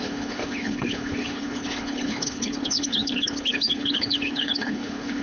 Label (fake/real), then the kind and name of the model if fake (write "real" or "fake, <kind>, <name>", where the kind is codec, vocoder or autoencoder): fake, codec, HILCodec